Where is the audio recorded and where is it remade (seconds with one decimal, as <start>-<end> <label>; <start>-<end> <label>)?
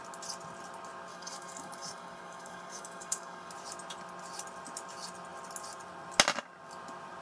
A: 0.0-1.1 recorded; 1.1-3.5 remade; 3.5-7.2 recorded